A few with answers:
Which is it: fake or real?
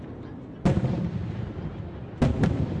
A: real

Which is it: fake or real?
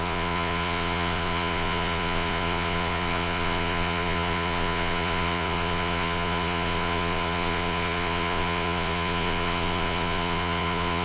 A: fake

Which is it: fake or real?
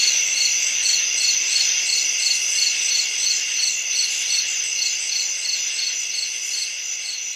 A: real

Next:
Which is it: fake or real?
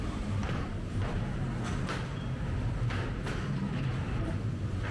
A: real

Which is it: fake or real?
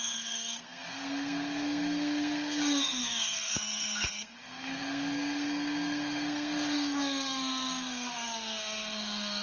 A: fake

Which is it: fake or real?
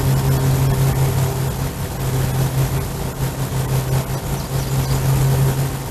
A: real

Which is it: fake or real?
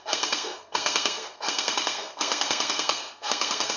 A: fake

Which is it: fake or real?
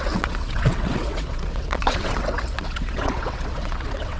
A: fake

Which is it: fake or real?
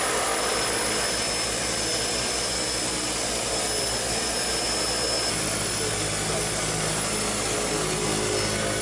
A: real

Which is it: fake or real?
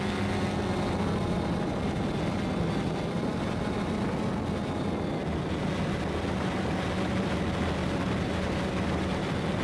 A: real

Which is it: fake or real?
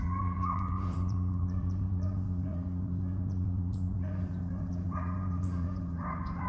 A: fake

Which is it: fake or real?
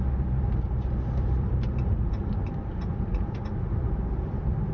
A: fake